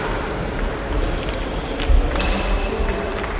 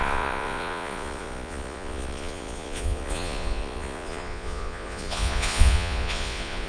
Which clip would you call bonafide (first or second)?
first